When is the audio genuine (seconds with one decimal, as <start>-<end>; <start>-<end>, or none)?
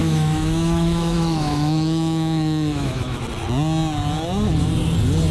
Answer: 3.2-5.3